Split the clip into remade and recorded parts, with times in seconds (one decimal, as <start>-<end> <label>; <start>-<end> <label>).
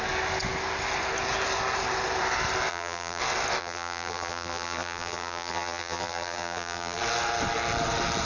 0.0-2.7 recorded; 2.7-3.2 remade; 3.2-3.6 recorded; 3.6-7.0 remade; 7.0-8.3 recorded